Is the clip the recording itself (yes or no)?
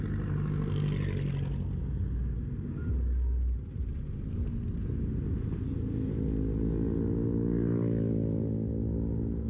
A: yes